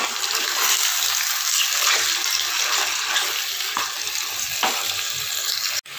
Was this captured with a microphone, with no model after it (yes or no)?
yes